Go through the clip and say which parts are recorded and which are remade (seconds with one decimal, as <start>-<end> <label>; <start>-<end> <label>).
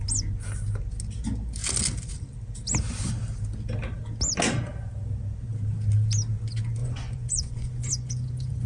0.0-6.8 recorded; 6.8-8.7 remade